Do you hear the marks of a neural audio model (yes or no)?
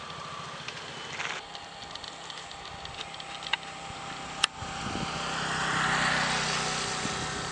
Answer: no